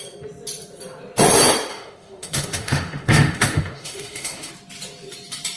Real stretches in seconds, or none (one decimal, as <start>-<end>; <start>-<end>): 0.0-1.7; 4.5-5.6